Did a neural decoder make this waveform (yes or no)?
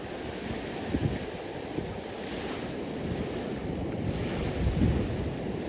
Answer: no